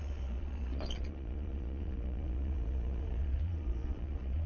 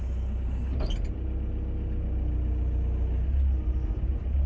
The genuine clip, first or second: second